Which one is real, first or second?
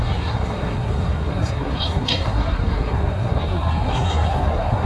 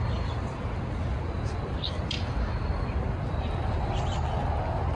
second